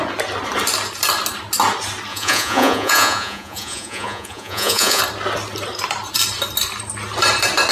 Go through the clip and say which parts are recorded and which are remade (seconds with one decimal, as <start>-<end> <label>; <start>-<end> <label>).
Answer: 0.0-2.1 recorded; 2.1-5.0 remade; 5.0-7.7 recorded